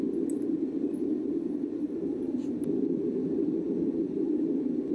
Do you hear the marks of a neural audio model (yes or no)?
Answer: no